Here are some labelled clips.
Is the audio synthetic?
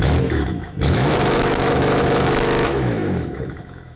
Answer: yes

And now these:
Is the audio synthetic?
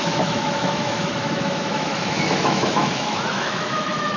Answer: yes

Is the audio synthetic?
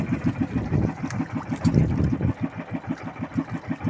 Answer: no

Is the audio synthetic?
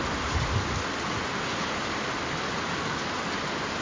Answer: no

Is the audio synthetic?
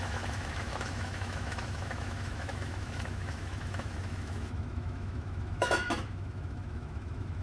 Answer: yes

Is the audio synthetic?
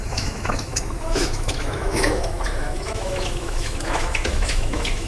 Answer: yes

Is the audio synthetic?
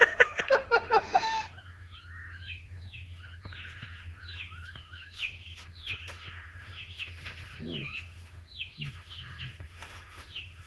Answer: yes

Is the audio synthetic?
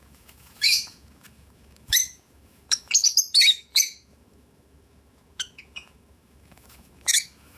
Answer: yes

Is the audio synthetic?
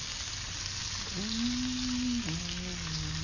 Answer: no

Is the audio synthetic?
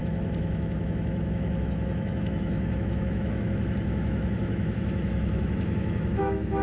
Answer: yes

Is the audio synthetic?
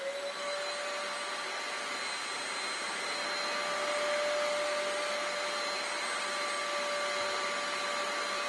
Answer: no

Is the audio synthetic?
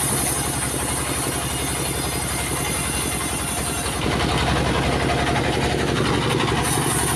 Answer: no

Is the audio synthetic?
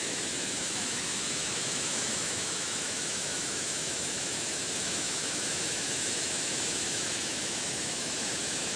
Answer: yes